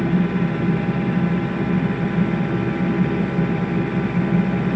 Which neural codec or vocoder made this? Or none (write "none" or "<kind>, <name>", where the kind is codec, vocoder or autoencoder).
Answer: none